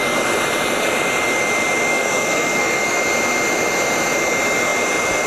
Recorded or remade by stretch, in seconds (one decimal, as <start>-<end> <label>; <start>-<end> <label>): 0.0-1.9 recorded; 1.9-3.0 remade; 3.0-5.3 recorded